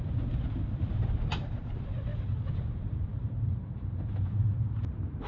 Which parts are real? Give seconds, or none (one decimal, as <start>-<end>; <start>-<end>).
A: 0.0-5.3